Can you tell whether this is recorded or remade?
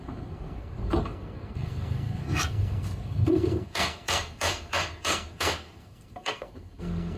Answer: remade